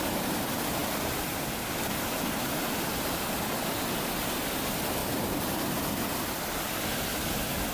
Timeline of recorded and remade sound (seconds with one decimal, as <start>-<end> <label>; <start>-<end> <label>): 0.0-5.0 recorded; 5.0-5.7 remade; 5.7-7.7 recorded